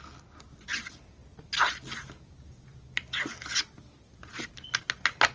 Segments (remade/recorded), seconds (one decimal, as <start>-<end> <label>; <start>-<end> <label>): 0.0-5.3 recorded